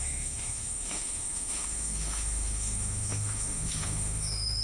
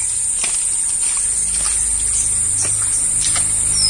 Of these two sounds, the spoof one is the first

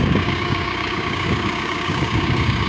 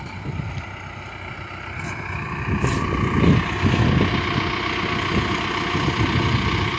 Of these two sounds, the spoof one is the first